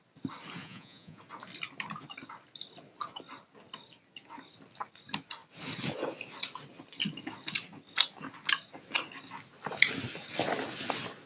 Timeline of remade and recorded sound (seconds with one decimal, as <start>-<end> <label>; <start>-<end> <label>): 0.0-0.6 recorded; 0.6-1.2 remade; 1.2-11.3 recorded